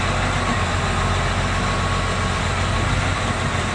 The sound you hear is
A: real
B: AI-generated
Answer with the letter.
A